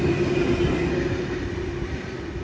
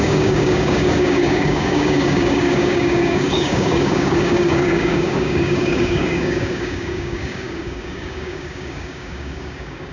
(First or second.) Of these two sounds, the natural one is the first